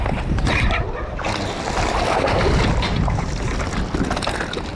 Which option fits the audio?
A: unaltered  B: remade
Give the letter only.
A